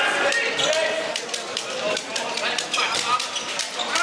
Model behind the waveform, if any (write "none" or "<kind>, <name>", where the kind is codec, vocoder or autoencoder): none